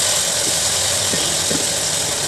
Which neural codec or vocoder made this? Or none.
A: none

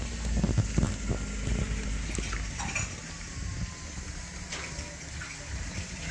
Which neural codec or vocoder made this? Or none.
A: none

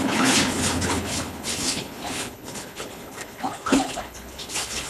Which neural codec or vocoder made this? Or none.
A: codec, HILCodec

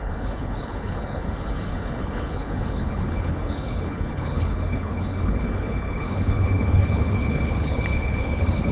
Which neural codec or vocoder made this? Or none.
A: codec, HILCodec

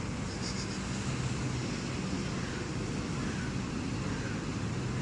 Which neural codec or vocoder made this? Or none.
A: none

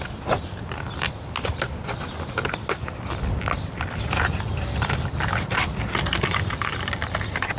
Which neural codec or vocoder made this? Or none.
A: none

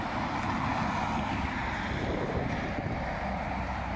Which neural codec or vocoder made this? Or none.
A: none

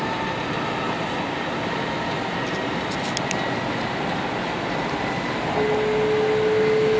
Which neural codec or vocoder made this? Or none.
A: none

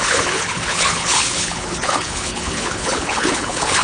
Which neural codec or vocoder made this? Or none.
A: codec, HILCodec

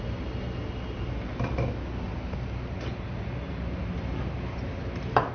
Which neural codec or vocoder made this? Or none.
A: none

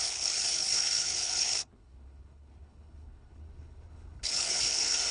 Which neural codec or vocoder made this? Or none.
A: codec, HILCodec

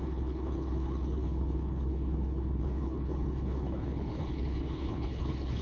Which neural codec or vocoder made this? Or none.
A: codec, HILCodec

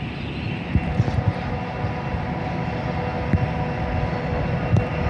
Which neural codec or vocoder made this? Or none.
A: none